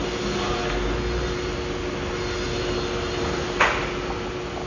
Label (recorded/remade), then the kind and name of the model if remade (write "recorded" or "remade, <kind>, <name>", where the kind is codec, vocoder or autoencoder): recorded